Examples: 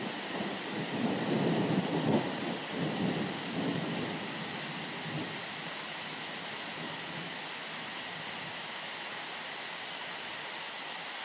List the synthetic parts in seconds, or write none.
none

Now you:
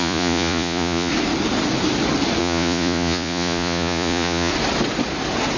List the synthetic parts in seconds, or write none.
0.0-1.1; 2.4-4.5

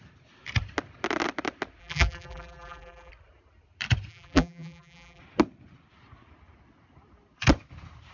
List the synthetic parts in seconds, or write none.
1.8-3.1; 4.1-5.2